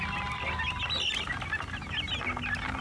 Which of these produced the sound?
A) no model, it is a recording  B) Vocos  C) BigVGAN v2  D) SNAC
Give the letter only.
A